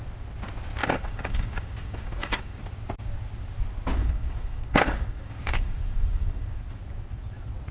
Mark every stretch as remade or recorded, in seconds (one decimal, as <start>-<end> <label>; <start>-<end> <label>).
0.0-0.8 recorded; 0.8-2.6 remade; 2.6-4.0 recorded; 4.0-6.6 remade; 6.6-7.7 recorded